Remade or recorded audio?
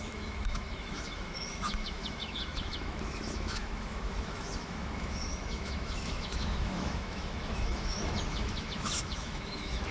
remade